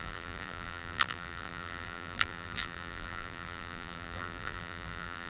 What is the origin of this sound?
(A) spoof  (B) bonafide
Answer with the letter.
A